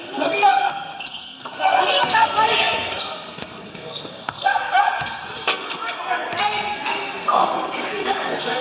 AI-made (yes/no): yes